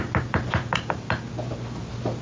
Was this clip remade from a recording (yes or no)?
no